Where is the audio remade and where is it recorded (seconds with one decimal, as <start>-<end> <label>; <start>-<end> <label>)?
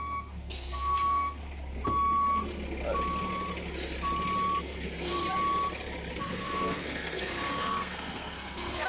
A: 0.0-1.4 remade; 1.4-4.6 recorded; 4.6-5.2 remade; 5.2-6.2 recorded; 6.2-8.9 remade